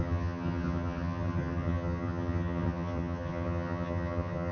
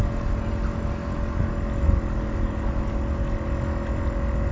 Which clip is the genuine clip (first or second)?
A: second